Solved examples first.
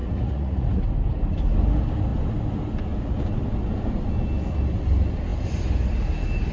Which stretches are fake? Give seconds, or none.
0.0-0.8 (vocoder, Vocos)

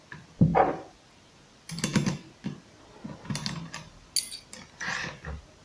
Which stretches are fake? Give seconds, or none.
none